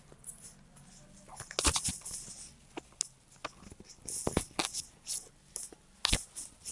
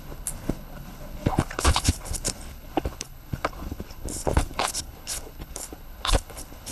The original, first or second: first